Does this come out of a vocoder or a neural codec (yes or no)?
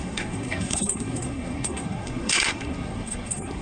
yes